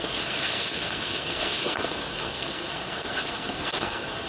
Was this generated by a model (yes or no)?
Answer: yes